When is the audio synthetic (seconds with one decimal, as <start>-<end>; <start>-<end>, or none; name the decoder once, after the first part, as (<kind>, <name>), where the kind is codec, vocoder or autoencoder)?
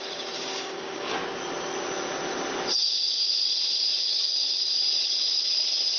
0.0-1.2 (codec, DAC); 4.0-4.7